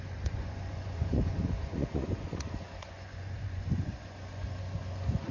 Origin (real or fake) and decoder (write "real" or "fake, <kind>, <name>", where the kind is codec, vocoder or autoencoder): fake, vocoder, Vocos